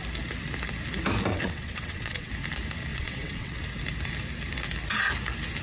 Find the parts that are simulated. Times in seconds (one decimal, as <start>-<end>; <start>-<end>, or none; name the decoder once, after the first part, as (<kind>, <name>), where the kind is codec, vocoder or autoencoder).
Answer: 1.3-2.3 (vocoder, WaveNeXt); 2.9-3.6